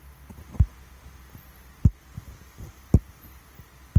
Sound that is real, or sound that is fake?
real